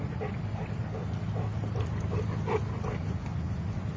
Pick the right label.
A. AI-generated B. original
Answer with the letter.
B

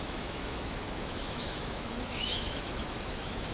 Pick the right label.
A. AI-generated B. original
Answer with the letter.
A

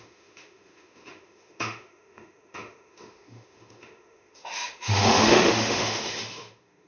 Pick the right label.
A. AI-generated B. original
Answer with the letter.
A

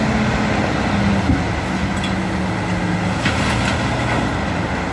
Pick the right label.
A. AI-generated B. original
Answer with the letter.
B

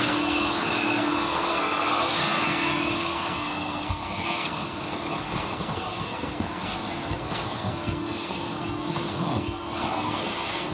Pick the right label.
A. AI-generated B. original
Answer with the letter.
A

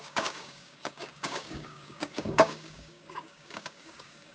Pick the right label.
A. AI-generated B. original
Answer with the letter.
A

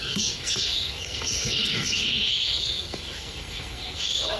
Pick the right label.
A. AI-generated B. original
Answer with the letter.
A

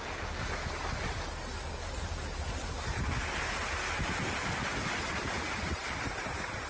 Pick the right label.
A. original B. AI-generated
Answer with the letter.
A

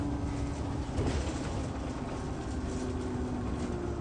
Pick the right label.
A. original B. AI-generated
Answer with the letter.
A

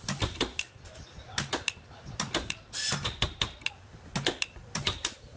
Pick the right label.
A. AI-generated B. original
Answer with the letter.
B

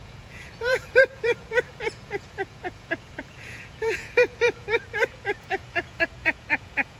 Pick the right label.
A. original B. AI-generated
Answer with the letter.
B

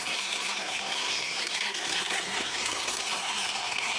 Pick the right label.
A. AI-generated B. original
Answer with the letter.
A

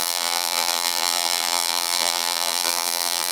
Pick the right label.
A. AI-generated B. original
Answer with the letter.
A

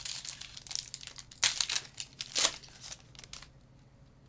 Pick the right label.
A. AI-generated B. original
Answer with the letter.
B